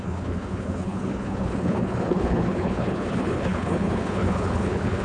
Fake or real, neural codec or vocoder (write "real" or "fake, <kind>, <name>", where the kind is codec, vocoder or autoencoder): fake, codec, HILCodec